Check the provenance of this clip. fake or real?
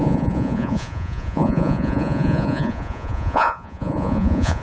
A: fake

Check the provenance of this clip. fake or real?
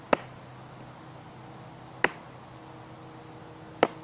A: real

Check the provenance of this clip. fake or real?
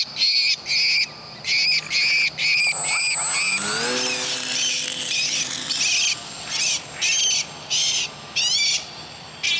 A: real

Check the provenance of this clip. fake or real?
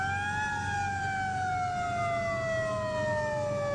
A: real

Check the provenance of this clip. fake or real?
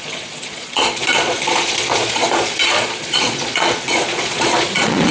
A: fake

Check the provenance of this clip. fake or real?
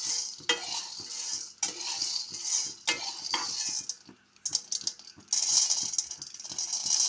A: real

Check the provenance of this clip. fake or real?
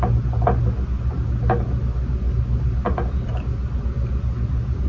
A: real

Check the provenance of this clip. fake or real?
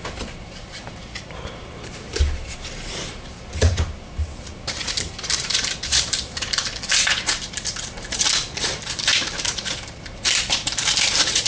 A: fake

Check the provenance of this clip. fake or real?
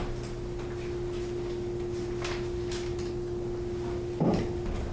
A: real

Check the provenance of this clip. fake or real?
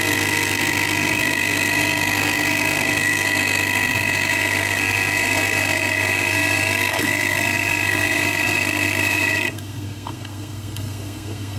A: fake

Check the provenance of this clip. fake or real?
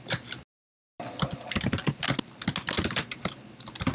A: real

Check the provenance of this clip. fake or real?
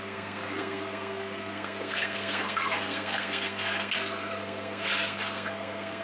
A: fake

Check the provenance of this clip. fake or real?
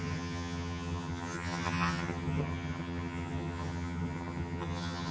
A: fake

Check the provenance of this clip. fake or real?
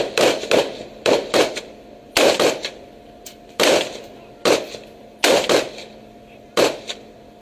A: real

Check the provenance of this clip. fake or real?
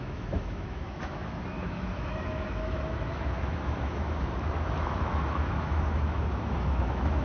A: fake